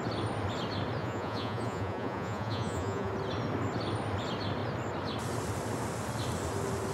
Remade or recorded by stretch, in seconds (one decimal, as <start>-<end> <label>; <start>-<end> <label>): 0.0-1.0 recorded; 1.0-3.1 remade; 3.1-6.9 recorded